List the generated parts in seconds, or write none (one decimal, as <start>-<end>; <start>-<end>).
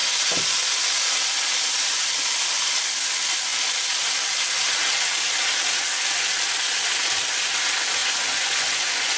8.0-9.2